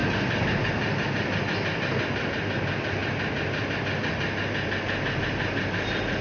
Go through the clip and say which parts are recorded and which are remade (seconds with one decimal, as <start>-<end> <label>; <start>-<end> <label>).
0.0-6.2 recorded